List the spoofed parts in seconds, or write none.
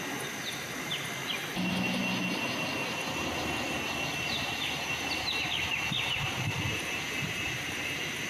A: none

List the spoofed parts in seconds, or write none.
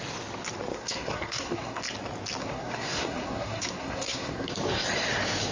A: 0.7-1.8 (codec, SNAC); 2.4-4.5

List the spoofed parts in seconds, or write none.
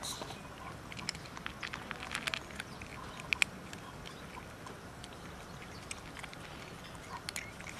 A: none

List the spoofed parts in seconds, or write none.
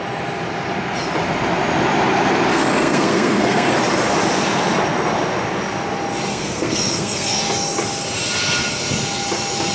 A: 2.5-3.7 (codec, SNAC); 6.3-7.4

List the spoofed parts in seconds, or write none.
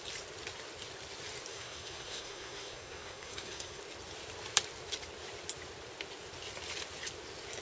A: 1.5-3.8 (codec, SNAC)